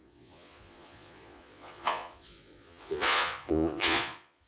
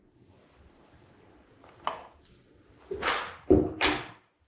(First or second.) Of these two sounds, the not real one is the first